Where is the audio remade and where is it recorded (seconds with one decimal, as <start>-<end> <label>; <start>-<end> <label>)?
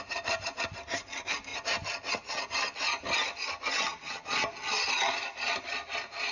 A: 0.0-1.5 remade; 1.5-5.1 recorded; 5.1-6.3 remade